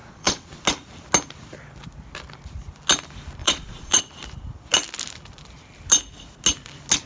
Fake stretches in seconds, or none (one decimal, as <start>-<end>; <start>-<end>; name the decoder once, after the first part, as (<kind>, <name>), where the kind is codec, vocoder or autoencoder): 0.0-0.6 (vocoder, Vocos); 3.4-4.0